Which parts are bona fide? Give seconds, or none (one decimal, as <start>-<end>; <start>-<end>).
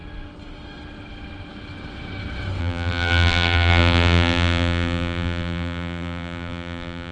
0.0-2.6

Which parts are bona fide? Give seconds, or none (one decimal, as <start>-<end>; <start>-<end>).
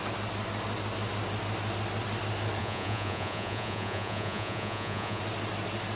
0.0-2.6; 5.2-6.0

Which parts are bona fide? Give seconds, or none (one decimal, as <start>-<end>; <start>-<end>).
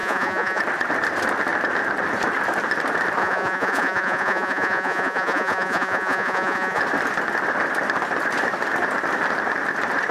0.6-3.2; 6.8-10.1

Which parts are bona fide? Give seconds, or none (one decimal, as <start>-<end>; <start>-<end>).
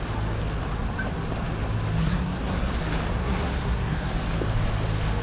0.0-2.0; 2.7-3.1; 4.1-5.2